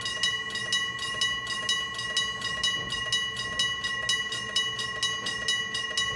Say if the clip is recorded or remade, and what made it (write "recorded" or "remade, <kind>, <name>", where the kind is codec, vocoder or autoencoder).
recorded